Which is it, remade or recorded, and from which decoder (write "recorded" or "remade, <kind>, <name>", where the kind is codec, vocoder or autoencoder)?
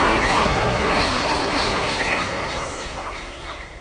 remade, codec, SNAC